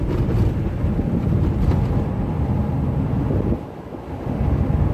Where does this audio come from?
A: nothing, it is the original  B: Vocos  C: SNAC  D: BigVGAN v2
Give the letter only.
A